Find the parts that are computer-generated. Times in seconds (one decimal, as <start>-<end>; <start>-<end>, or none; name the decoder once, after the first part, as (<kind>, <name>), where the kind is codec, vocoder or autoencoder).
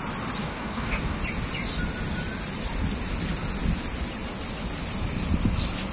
0.4-1.2 (codec, DAC)